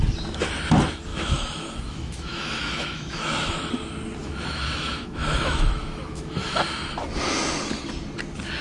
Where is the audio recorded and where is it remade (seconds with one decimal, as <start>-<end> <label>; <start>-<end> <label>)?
0.0-1.1 recorded; 1.1-3.7 remade; 3.7-4.2 recorded; 4.2-6.5 remade; 6.5-8.6 recorded